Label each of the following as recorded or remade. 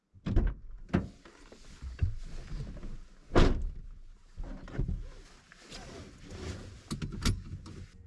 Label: recorded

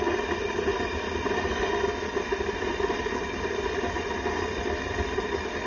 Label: recorded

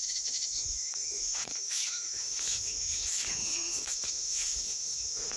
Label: remade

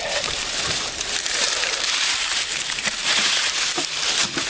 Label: remade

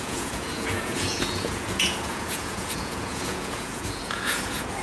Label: remade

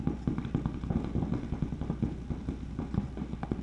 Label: recorded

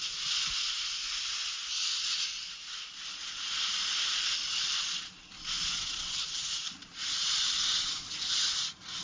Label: recorded